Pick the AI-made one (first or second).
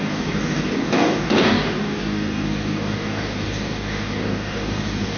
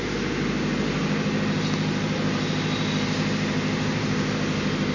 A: first